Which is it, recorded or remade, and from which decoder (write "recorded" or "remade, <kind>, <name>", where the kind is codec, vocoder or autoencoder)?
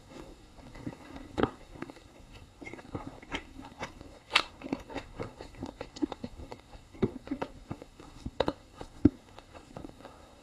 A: remade, codec, SNAC